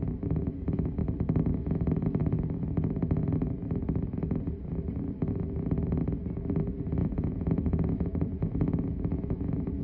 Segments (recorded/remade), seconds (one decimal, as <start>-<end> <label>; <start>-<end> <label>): 0.0-7.0 recorded; 7.0-9.8 remade